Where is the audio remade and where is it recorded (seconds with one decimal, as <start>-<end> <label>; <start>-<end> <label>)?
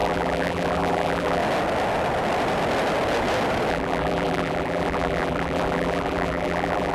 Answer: 0.0-1.4 remade; 1.4-3.7 recorded; 3.7-6.9 remade